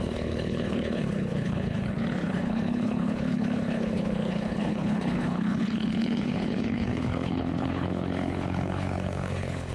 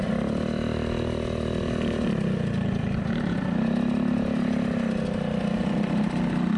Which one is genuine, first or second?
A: second